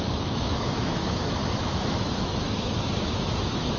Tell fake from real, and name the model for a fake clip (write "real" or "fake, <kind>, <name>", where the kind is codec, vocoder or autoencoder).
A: fake, autoencoder, DAC-VAE